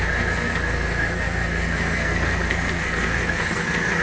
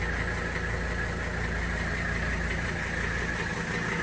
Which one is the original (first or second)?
second